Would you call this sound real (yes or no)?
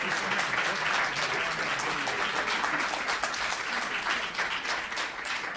yes